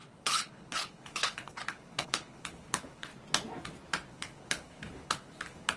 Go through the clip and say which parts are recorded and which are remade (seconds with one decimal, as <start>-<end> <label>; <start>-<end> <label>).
0.0-3.1 remade; 3.1-4.1 recorded; 4.1-5.8 remade